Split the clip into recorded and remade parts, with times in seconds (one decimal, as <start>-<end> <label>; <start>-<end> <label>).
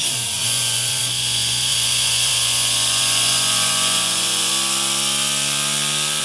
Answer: 0.0-4.5 remade; 4.5-6.2 recorded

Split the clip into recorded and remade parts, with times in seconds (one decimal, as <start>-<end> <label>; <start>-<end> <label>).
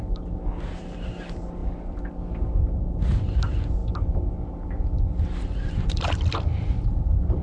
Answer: 0.0-7.4 recorded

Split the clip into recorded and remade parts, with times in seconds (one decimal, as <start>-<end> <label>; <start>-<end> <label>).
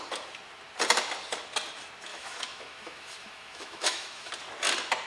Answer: 0.0-2.1 recorded; 2.1-4.3 remade; 4.3-5.1 recorded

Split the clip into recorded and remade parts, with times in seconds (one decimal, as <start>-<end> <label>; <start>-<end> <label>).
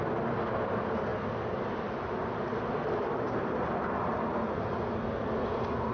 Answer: 0.0-5.9 recorded